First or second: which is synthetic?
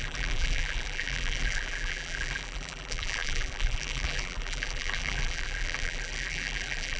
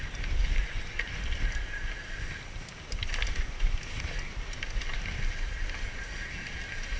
first